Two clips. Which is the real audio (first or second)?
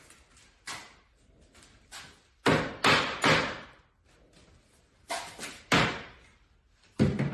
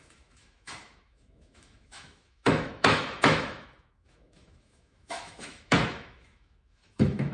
first